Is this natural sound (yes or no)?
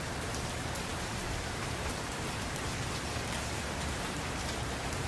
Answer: no